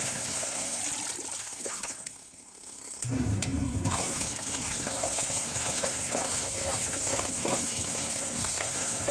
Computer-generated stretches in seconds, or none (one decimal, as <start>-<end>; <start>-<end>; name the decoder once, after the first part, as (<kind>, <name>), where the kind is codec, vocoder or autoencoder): 0.0-0.8 (codec, SNAC); 1.4-9.1